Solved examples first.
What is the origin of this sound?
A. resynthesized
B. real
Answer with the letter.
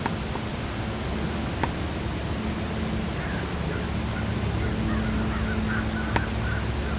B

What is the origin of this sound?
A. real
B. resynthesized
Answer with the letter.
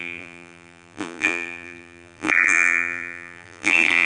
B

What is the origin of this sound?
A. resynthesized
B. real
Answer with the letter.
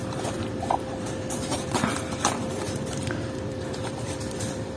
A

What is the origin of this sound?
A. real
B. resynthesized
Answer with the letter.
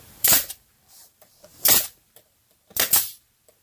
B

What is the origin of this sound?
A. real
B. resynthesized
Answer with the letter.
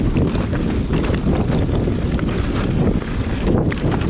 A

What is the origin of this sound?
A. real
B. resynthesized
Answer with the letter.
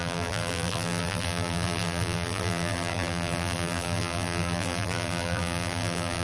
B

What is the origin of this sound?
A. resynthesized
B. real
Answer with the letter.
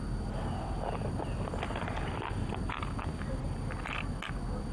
B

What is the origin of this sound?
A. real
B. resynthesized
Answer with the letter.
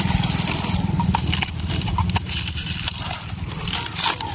B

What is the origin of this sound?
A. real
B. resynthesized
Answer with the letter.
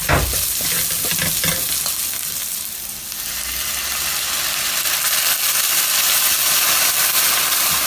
A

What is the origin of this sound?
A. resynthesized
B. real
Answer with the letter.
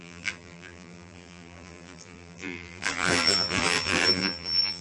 A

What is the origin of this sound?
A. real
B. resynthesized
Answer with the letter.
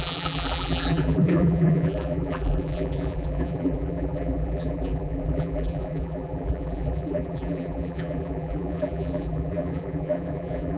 B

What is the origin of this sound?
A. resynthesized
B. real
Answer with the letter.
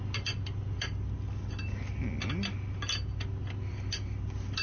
B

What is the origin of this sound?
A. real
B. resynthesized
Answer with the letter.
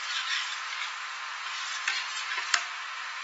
A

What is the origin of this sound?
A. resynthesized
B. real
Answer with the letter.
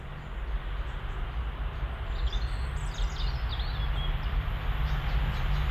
B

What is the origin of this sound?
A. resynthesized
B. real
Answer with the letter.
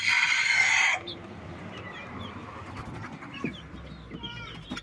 A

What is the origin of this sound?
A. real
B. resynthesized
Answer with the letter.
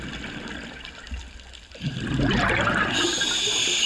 A